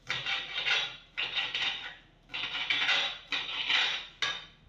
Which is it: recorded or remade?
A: recorded